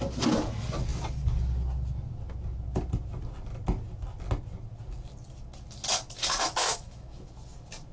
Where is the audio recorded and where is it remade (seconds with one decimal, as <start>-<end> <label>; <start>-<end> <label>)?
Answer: 0.0-6.3 recorded; 6.3-7.3 remade; 7.3-7.9 recorded